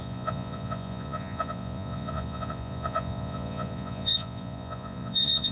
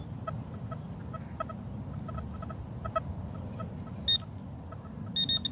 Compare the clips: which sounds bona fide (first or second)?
second